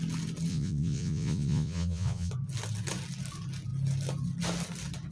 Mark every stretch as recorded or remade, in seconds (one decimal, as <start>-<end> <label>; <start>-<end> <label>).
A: 0.0-0.5 recorded; 0.5-2.3 remade; 2.3-5.1 recorded